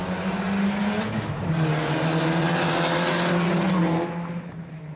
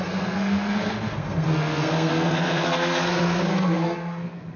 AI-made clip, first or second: second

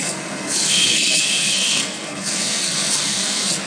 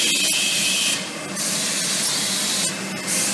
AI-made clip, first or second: first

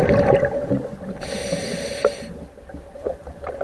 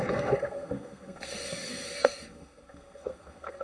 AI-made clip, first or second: second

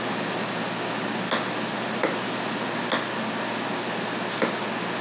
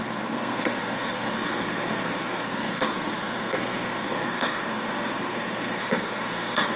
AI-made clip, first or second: second